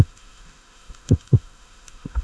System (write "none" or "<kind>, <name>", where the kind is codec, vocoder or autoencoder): autoencoder, DAC-VAE